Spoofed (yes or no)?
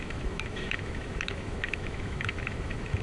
yes